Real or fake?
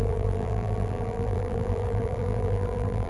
fake